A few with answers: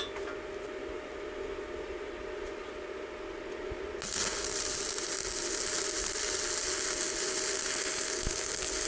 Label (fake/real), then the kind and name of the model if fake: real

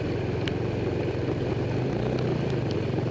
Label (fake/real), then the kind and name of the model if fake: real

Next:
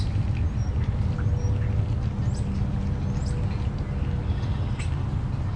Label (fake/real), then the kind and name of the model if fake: real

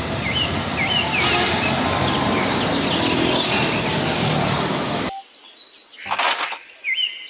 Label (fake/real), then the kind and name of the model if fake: real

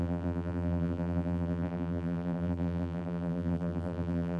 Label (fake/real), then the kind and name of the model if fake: fake, vocoder, BigVGAN v2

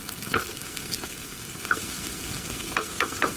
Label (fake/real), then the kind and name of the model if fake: fake, codec, SNAC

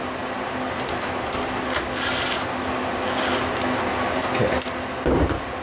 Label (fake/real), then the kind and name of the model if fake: real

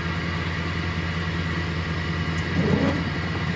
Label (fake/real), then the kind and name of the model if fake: real